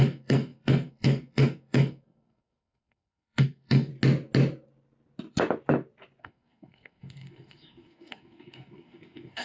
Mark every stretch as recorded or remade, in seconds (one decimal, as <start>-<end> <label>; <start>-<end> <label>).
0.0-3.9 remade; 3.9-6.2 recorded; 6.2-9.4 remade